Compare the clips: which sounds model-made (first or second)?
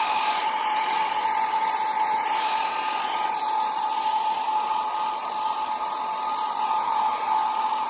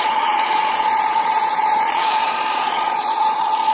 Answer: second